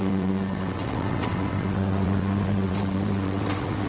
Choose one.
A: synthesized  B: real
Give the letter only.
A